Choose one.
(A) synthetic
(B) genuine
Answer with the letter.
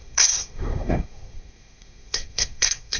A